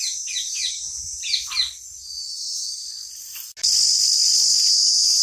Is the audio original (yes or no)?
yes